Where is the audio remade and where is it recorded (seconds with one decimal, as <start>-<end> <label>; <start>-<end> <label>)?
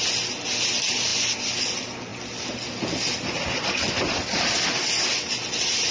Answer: 0.0-5.9 recorded